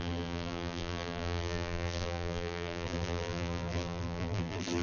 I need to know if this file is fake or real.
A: fake